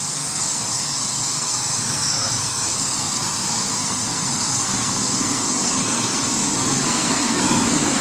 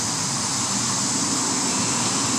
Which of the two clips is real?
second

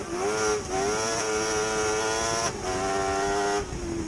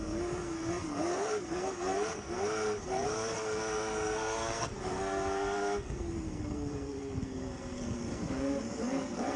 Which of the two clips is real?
first